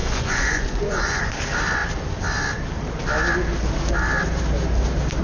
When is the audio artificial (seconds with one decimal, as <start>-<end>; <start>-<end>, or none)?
0.0-1.3